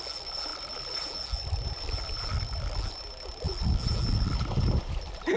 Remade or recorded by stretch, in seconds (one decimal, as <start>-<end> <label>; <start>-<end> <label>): 0.0-5.4 recorded